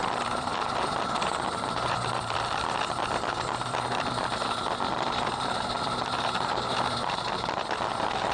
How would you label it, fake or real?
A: fake